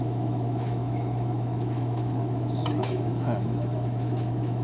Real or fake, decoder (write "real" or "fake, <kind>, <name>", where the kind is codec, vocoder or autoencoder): fake, autoencoder, DAC-VAE